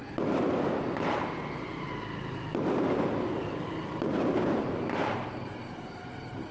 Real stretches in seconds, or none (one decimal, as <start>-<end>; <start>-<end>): 0.0-6.5